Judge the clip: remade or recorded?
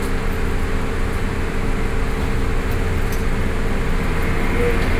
recorded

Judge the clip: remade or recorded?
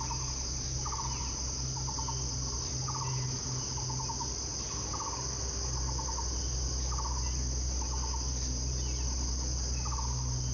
recorded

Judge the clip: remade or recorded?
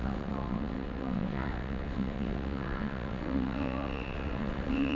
remade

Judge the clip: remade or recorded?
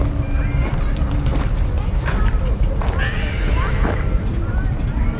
remade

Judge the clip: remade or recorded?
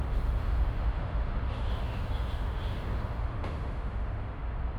remade